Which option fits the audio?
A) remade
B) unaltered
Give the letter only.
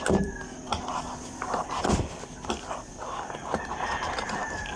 A